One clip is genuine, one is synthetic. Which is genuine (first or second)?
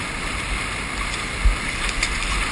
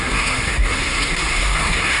first